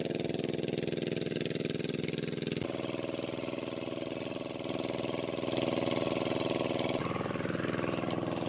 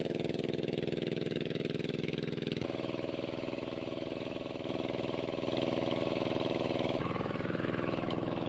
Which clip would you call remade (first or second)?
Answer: second